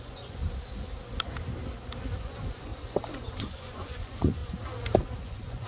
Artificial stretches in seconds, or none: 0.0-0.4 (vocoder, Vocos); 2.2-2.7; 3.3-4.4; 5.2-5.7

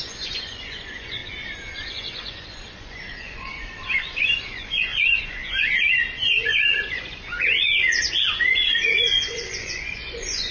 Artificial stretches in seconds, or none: 0.0-1.2 (vocoder, Vocos); 1.9-10.5